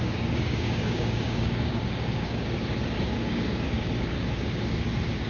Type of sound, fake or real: fake